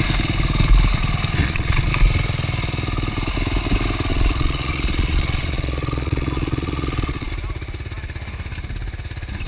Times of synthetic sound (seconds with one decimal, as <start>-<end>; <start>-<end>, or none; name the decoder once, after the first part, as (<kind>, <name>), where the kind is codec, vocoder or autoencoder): 1.4-1.9 (vocoder, Vocos); 4.1-7.3